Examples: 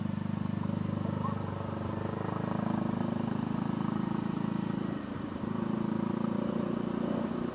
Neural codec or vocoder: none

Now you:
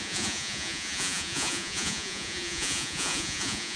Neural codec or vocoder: vocoder, Vocos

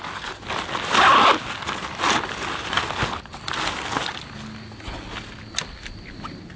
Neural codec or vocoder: none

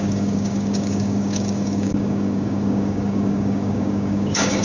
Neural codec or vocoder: codec, DAC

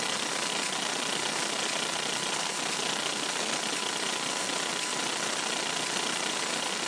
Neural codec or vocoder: none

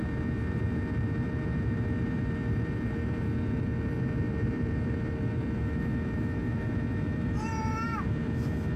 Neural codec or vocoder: vocoder, BigVGAN v2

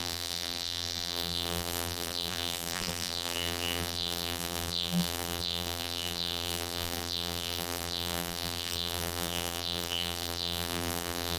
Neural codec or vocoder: vocoder, BigVGAN v2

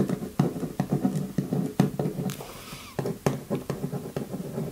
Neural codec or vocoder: none